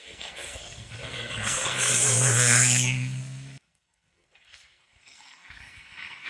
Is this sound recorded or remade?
remade